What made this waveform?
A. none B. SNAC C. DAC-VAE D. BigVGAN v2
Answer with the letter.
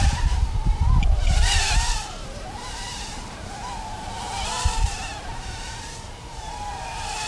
D